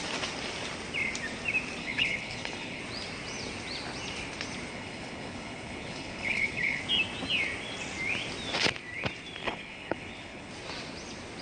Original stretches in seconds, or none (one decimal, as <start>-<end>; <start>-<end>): 0.0-1.8; 2.8-4.7; 6.8-9.4; 10.5-11.4